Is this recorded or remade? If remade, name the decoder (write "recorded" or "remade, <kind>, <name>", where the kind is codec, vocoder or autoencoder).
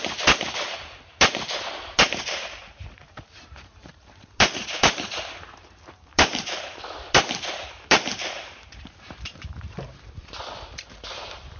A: remade, vocoder, BigVGAN v2